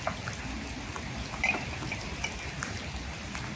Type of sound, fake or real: real